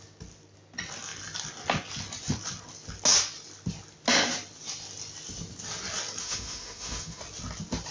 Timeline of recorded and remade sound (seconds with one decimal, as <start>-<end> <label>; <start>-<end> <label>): 0.0-6.2 recorded; 6.2-7.2 remade; 7.2-7.9 recorded